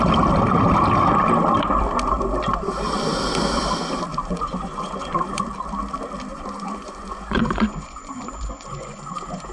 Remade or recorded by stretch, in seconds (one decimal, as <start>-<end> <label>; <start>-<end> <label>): 0.0-4.1 recorded; 4.1-5.4 remade; 5.4-6.3 recorded; 6.3-9.5 remade